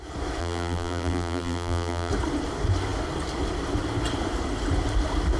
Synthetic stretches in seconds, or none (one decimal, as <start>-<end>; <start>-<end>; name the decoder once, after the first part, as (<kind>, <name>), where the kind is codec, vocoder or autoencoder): 0.4-2.1 (vocoder, BigVGAN v2)